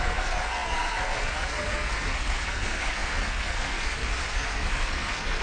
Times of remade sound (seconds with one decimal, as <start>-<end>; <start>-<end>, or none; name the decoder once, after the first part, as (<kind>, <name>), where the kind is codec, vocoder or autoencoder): 0.0-5.4 (codec, SNAC)